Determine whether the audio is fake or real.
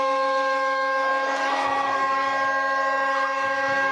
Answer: fake